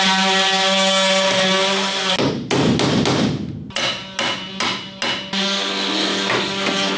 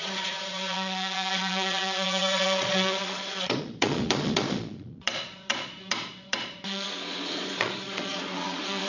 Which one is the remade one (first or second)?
second